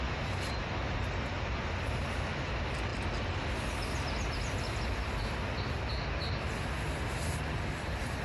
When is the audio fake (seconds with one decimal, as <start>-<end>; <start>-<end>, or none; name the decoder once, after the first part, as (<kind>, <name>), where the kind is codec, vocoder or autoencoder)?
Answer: none